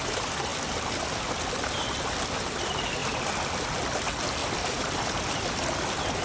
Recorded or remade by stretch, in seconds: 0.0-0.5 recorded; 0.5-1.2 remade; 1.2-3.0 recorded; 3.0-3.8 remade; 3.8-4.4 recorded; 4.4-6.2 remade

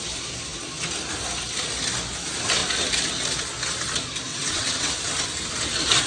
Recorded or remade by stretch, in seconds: 0.0-4.3 recorded; 4.3-4.9 remade; 4.9-6.1 recorded

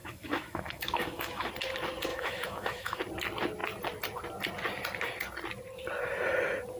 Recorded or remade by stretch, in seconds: 0.0-1.5 remade; 1.5-2.1 recorded; 2.1-3.0 remade; 3.0-6.8 recorded

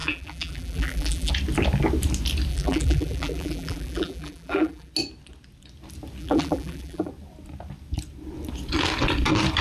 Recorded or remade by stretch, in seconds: 0.0-1.3 remade; 1.3-2.5 recorded; 2.5-4.9 remade; 4.9-6.2 recorded; 6.2-7.1 remade; 7.1-9.6 recorded

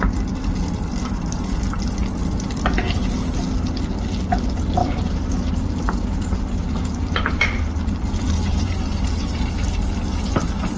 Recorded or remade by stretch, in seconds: 0.0-4.8 recorded; 4.8-9.2 remade; 9.2-10.8 recorded

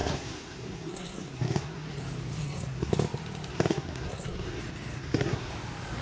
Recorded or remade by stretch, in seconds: 0.0-2.0 remade; 2.0-2.4 recorded; 2.4-2.9 remade; 2.9-3.5 recorded; 3.5-4.6 remade; 4.6-5.0 recorded; 5.0-5.5 remade; 5.5-6.0 recorded